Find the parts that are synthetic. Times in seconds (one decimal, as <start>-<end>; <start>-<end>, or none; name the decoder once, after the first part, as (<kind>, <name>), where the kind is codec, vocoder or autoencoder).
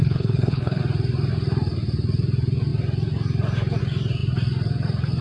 0.0-0.8 (codec, HILCodec)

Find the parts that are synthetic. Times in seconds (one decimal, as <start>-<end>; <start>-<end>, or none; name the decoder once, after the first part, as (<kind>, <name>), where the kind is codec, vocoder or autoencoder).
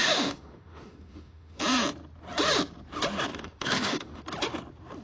0.0-1.6 (autoencoder, DAC-VAE); 3.3-4.2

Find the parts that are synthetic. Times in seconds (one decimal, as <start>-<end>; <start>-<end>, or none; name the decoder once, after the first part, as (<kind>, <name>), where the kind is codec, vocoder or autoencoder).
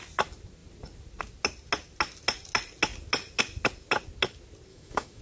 4.7-5.2 (autoencoder, DAC-VAE)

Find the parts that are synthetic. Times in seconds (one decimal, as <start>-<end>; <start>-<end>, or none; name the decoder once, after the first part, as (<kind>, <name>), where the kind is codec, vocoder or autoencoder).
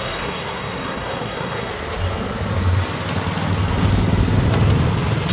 0.0-1.7 (codec, SNAC)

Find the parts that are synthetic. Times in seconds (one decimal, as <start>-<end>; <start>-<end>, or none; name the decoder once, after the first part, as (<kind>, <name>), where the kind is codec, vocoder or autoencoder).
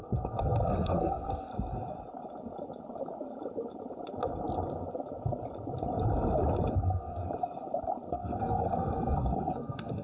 0.0-1.5 (codec, SNAC); 6.7-7.2; 8.1-10.0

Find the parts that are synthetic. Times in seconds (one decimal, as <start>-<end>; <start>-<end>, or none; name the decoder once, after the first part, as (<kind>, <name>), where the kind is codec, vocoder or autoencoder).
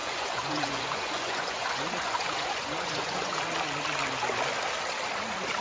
0.0-3.4 (vocoder, Vocos)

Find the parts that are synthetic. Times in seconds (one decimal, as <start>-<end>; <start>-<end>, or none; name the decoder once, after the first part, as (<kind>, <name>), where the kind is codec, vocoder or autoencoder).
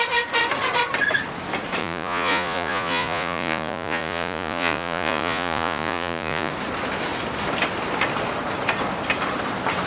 1.8-6.5 (vocoder, Vocos)